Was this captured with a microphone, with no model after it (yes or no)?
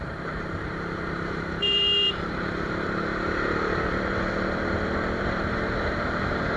no